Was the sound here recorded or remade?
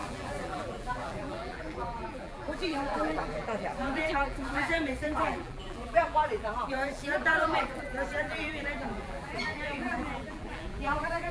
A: remade